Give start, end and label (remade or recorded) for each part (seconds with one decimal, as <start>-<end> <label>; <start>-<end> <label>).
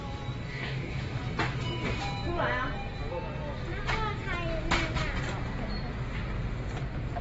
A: 0.0-0.5 recorded; 0.5-1.2 remade; 1.2-7.2 recorded